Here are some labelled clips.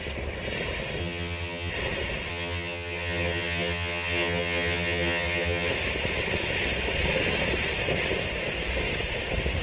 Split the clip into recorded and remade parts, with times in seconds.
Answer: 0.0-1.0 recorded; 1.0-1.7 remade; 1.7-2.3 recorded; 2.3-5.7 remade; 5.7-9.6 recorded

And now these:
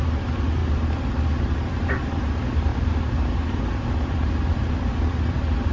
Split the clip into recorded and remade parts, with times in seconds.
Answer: 0.0-5.7 recorded

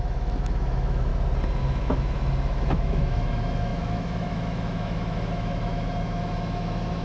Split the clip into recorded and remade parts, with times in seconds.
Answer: 0.0-1.1 remade; 1.1-1.6 recorded; 1.6-7.0 remade

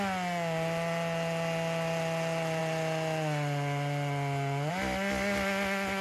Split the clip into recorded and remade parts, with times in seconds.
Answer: 0.0-6.0 recorded

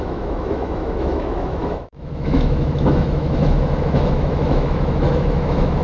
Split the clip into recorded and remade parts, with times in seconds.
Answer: 0.0-5.8 remade

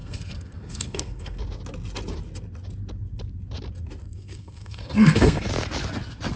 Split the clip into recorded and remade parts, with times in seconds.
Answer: 0.0-1.4 remade; 1.4-4.0 recorded; 4.0-5.5 remade; 5.5-6.4 recorded

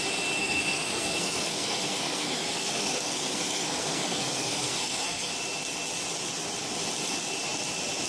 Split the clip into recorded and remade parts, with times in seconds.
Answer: 0.0-0.4 recorded; 0.4-5.3 remade; 5.3-8.1 recorded